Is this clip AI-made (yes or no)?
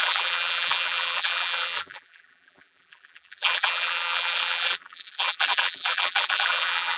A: yes